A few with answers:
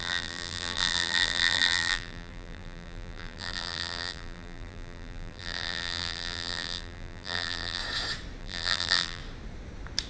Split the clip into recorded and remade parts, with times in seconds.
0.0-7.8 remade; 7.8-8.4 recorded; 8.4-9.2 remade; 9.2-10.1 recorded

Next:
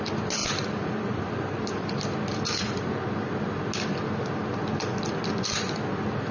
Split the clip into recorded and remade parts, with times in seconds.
0.0-0.4 recorded; 0.4-2.9 remade; 2.9-6.3 recorded

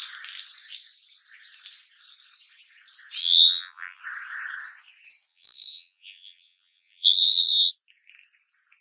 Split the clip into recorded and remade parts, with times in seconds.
0.0-3.2 recorded; 3.2-4.0 remade; 4.0-5.3 recorded; 5.3-7.7 remade; 7.7-8.8 recorded